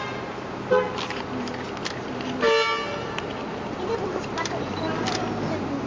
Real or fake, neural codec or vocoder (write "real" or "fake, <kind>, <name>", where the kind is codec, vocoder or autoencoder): real